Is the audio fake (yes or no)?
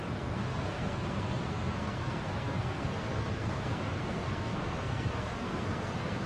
yes